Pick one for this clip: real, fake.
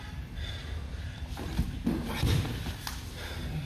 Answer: real